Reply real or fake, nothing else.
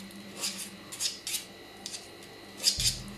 real